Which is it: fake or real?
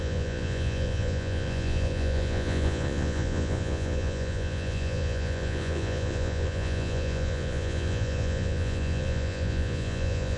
fake